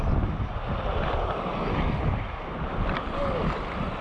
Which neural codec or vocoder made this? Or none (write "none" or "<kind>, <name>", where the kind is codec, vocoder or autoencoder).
none